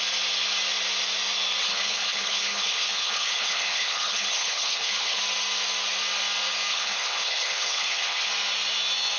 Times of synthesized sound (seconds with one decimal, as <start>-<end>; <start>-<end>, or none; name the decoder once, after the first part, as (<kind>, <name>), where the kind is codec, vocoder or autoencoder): 1.6-5.2 (codec, HILCodec); 6.7-8.3